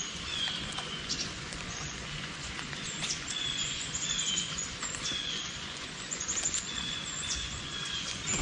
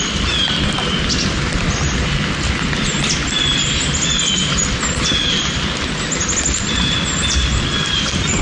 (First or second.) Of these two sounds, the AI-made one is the first